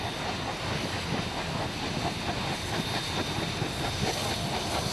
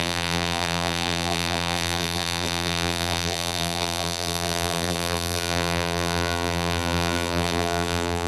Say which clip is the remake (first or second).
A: second